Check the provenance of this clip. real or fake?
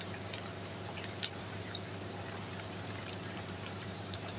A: fake